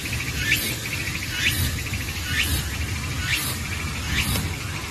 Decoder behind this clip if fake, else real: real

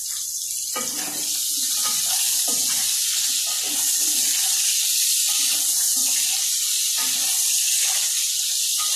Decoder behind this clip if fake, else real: real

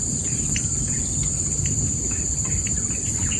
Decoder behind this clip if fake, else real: real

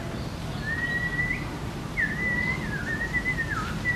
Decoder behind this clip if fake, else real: real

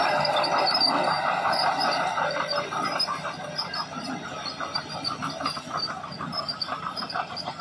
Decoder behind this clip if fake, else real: real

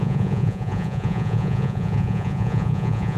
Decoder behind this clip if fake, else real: fake, vocoder, Vocos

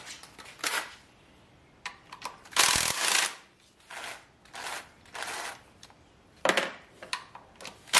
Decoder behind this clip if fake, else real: real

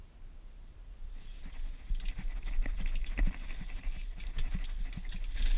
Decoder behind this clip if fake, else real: real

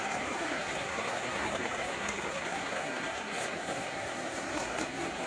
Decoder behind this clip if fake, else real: fake, codec, SNAC